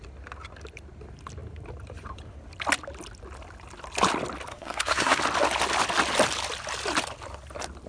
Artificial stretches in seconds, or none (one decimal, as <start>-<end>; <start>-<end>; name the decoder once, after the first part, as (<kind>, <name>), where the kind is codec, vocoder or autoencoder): 4.5-5.2 (codec, SNAC)